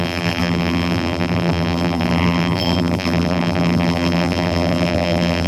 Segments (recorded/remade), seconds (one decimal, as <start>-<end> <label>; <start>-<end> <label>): 0.0-5.5 remade